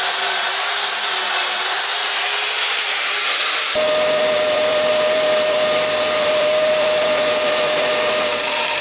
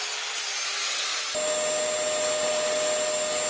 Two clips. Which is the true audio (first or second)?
second